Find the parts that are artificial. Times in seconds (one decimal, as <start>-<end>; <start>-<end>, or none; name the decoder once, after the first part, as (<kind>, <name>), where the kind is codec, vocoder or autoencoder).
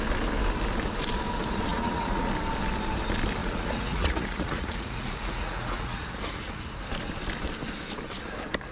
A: 1.7-2.3 (vocoder, Vocos); 3.4-6.1